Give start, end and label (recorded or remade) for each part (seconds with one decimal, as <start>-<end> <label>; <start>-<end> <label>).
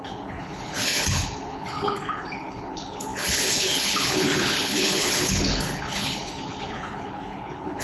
0.0-7.8 remade